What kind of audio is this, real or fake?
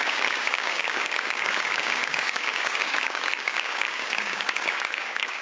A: fake